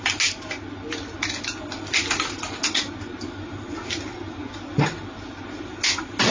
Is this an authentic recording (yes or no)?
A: yes